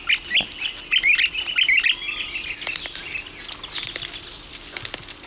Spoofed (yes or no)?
no